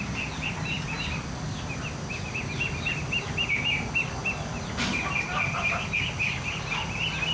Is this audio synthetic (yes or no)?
no